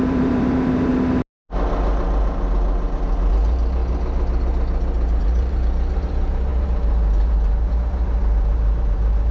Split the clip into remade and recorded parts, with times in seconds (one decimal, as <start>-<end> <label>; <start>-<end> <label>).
0.0-0.9 remade; 0.9-3.3 recorded; 3.3-3.8 remade; 3.8-5.2 recorded; 5.2-9.3 remade